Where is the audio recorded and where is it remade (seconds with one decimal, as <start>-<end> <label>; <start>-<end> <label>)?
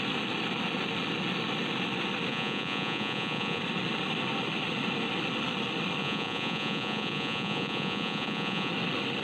0.0-2.3 recorded; 2.3-3.6 remade; 3.6-6.0 recorded; 6.0-8.7 remade; 8.7-9.2 recorded